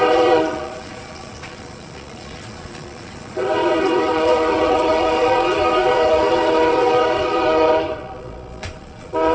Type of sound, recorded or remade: remade